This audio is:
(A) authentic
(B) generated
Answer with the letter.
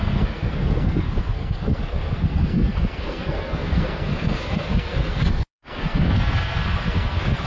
B